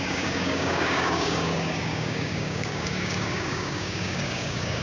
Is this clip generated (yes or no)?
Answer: yes